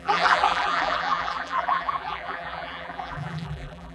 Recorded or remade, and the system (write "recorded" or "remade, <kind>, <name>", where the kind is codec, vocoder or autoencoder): remade, vocoder, BigVGAN v2